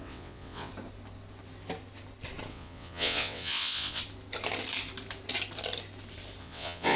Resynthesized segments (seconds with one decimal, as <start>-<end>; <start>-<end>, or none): 0.0-0.7; 2.5-4.0; 6.4-7.0